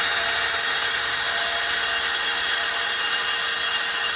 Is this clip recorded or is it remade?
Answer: recorded